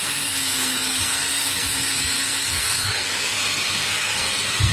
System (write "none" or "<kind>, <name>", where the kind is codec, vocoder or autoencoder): codec, SNAC